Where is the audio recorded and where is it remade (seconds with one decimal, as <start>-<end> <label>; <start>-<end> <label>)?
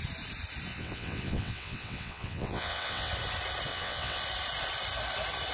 0.0-0.7 recorded; 0.7-3.1 remade; 3.1-3.7 recorded; 3.7-4.2 remade; 4.2-5.5 recorded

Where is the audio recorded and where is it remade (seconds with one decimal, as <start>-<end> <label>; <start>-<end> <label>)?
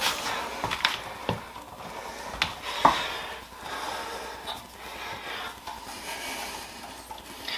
0.0-7.6 recorded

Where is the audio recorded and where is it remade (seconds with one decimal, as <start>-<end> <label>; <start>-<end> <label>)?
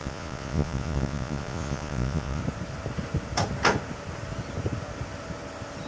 0.0-2.4 remade; 2.4-5.9 recorded